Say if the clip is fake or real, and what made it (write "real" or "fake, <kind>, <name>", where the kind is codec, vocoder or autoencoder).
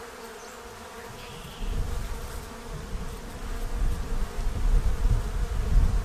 real